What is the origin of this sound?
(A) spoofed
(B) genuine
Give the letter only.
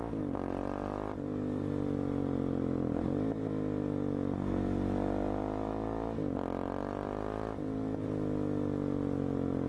B